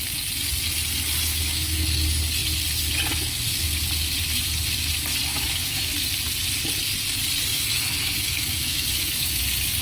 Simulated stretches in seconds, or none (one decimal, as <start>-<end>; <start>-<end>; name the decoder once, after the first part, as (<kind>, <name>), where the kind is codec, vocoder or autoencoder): 1.3-1.8 (autoencoder, DAC-VAE); 5.3-5.9; 7.5-9.4